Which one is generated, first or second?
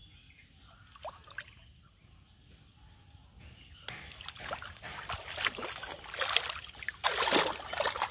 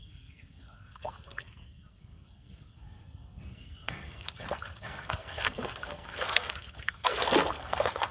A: second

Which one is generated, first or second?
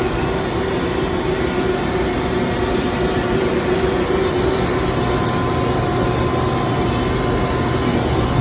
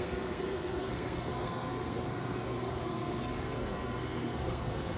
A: second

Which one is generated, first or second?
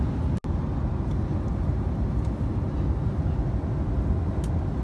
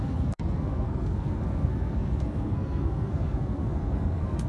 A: second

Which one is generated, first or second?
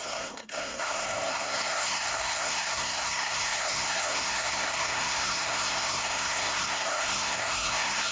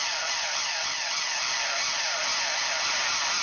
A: first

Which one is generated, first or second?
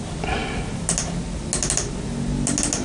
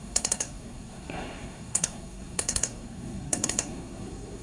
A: second